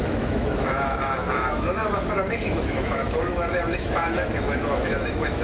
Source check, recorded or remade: remade